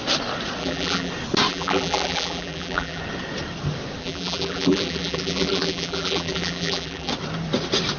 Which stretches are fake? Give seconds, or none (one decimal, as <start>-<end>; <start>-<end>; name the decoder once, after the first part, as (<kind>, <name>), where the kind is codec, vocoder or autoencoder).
0.6-1.1 (vocoder, BigVGAN v2); 1.5-3.0; 4.0-7.1